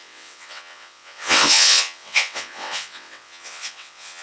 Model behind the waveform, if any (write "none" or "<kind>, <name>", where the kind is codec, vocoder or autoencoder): vocoder, WaveNeXt